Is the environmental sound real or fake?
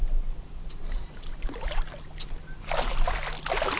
real